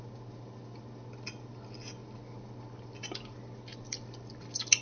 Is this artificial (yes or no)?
no